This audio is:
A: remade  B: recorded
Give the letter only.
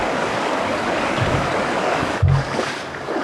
A